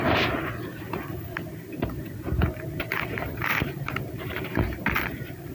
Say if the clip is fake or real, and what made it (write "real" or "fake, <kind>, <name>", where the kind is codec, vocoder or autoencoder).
fake, vocoder, BigVGAN v2